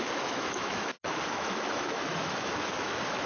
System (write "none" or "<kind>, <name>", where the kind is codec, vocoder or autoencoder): autoencoder, DAC-VAE